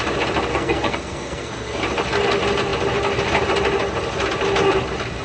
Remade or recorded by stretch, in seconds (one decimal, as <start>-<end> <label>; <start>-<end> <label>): 0.0-0.5 recorded; 0.5-1.8 remade; 1.8-5.2 recorded